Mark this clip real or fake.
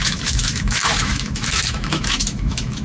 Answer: fake